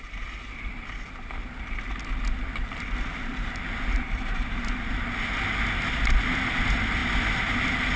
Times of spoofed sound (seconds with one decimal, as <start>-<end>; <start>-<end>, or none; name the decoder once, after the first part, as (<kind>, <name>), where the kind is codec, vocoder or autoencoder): 3.1-5.0 (vocoder, BigVGAN v2)